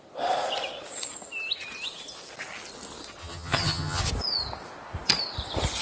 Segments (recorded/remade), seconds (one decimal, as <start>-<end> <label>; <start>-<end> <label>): 0.0-3.2 recorded; 3.2-4.0 remade; 4.0-5.8 recorded